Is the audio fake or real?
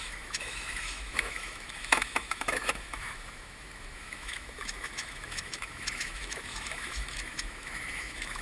fake